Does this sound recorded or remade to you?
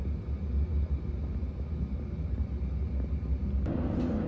recorded